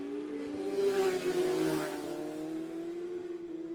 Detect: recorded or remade recorded